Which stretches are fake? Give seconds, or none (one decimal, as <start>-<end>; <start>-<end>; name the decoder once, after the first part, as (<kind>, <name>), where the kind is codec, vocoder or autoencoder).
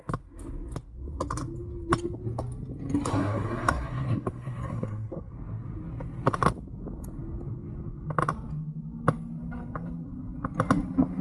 3.1-5.3 (codec, SNAC)